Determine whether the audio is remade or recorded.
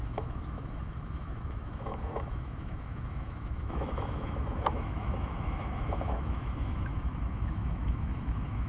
remade